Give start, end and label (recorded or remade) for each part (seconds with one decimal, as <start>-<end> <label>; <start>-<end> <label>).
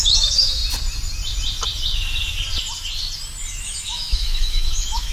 0.0-0.6 remade; 0.6-3.6 recorded; 3.6-5.1 remade